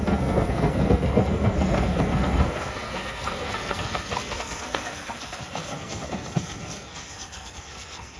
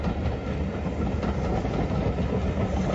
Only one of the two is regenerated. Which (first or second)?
first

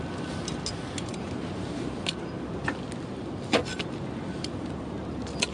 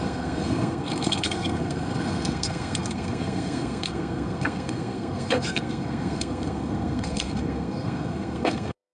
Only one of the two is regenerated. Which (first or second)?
second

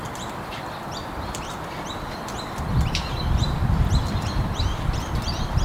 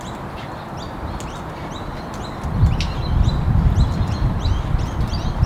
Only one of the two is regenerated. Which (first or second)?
first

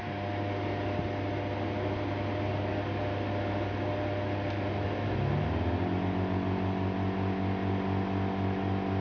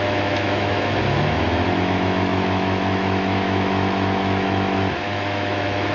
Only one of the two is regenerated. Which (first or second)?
second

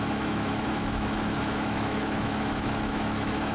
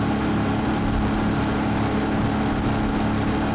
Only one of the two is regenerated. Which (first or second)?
first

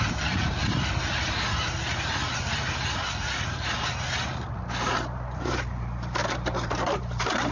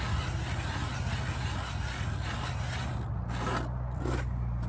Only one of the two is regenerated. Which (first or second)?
first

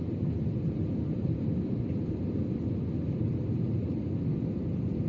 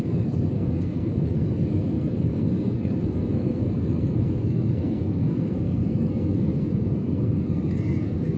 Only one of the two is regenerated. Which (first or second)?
second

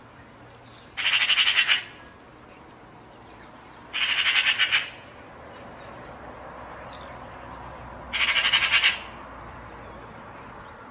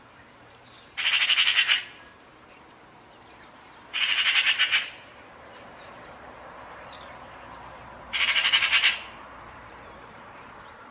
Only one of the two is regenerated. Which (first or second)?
second